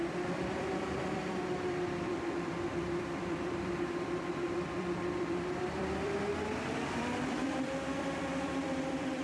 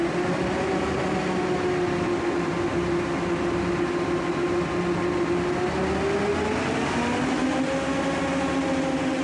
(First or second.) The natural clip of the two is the second